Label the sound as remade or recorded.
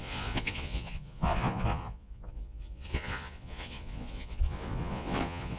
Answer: remade